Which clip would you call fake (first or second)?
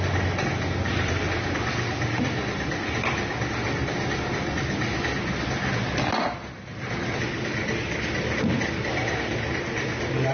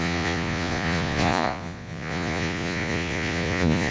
second